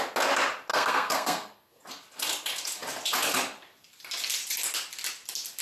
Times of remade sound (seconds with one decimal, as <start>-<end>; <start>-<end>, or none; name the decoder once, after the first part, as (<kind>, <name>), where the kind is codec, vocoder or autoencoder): 0.7-1.8 (codec, SNAC)